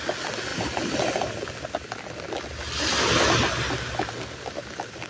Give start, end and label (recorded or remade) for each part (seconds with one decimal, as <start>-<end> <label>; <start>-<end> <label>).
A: 0.0-5.1 recorded